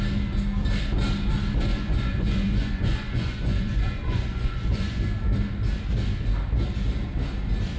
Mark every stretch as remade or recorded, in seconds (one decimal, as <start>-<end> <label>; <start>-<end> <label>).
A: 0.0-1.7 recorded; 1.7-5.0 remade; 5.0-7.8 recorded